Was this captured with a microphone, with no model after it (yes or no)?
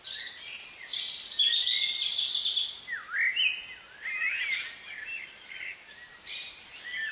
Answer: yes